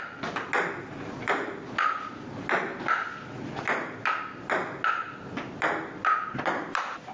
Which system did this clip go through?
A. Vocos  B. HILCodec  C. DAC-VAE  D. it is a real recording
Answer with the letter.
D